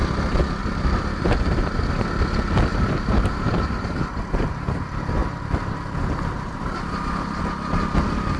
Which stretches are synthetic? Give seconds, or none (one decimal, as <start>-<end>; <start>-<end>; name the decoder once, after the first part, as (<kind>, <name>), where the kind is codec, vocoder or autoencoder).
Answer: 0.6-1.9 (vocoder, BigVGAN v2); 2.7-4.5; 5.2-7.4